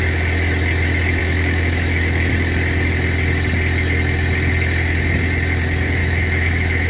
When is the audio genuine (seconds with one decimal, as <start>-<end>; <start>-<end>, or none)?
0.0-1.2; 2.3-6.0